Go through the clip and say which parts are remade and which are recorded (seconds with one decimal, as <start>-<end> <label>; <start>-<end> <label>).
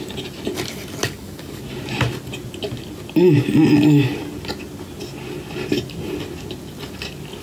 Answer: 0.0-1.0 recorded; 1.0-1.6 remade; 1.6-7.4 recorded